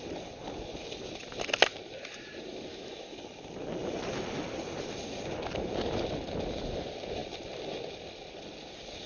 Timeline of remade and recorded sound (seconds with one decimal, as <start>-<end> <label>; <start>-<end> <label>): 0.0-2.7 recorded; 2.7-3.2 remade; 3.2-9.1 recorded